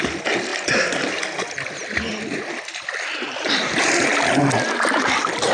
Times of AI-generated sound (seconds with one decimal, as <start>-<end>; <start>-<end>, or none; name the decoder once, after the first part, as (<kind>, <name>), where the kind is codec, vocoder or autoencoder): none